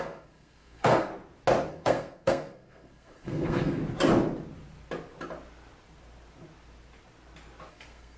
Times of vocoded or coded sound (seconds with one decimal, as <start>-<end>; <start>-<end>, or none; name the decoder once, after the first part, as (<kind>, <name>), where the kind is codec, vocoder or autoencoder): 0.0-1.1 (codec, SNAC); 1.7-3.8; 7.7-8.2